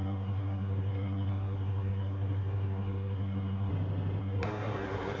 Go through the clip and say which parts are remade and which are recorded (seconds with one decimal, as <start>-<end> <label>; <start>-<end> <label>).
0.0-3.7 remade; 3.7-4.2 recorded; 4.2-5.2 remade